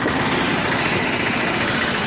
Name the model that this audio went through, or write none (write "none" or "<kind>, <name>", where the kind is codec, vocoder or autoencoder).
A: none